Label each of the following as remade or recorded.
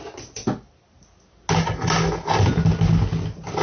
recorded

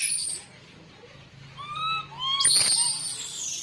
recorded